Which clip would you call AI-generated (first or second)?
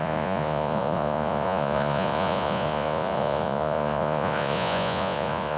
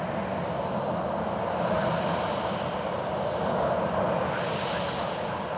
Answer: first